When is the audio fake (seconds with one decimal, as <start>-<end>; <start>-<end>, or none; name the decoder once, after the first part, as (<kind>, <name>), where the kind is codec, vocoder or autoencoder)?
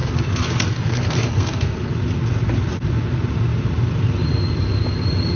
0.0-1.9 (codec, SNAC)